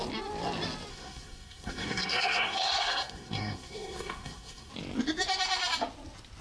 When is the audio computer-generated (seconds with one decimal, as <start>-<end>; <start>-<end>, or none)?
0.9-4.7